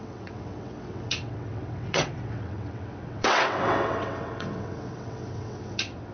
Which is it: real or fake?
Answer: fake